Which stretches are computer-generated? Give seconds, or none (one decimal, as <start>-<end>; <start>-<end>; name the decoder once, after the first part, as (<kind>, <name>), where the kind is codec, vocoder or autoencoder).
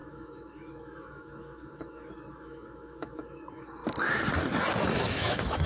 0.0-3.8 (autoencoder, DAC-VAE); 4.9-5.7